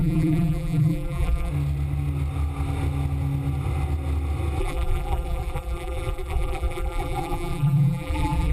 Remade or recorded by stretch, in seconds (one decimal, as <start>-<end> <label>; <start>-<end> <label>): 0.0-1.5 remade; 1.5-4.6 recorded; 4.6-8.5 remade